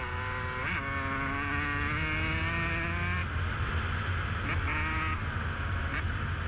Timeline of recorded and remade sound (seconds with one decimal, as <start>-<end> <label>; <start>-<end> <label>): 0.0-6.5 recorded